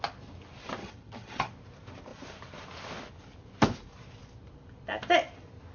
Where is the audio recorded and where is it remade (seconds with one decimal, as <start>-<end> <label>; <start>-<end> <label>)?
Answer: 0.0-0.8 recorded; 0.8-1.5 remade; 1.5-5.7 recorded